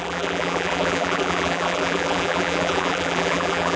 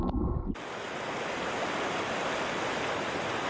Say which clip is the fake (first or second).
first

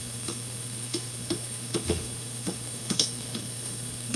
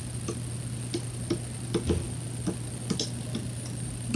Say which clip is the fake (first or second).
first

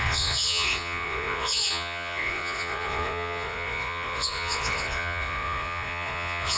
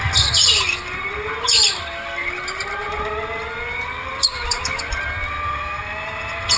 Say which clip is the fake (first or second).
first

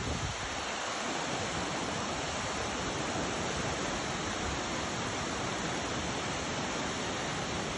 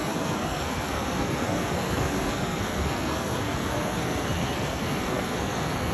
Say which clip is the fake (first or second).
second